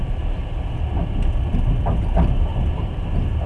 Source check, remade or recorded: recorded